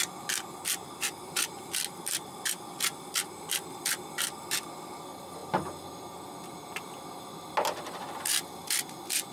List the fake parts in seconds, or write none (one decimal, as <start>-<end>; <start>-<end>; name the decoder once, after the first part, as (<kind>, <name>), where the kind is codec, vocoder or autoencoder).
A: none